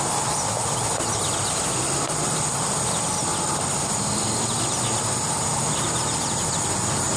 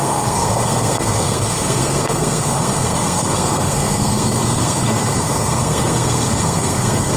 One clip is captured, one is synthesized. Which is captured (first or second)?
first